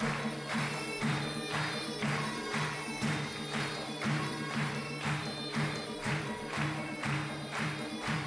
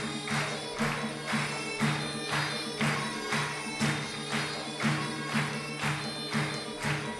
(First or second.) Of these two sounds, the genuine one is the second